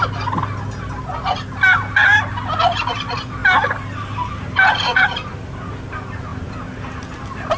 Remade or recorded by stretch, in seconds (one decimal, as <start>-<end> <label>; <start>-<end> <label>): 0.0-7.6 recorded